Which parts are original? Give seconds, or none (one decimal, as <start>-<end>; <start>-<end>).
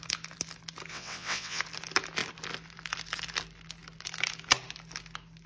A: 0.0-0.9; 1.6-5.5